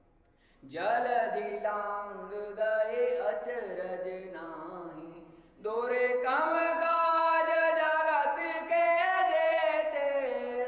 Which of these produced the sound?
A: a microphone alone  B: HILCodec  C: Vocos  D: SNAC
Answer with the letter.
C